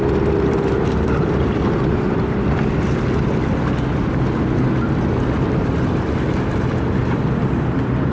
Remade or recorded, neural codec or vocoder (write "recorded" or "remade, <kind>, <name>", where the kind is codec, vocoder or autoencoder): recorded